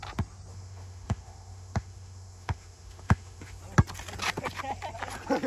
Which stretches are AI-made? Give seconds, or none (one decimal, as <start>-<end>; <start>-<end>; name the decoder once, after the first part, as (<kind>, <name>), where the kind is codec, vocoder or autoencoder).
0.5-3.6 (autoencoder, DAC-VAE)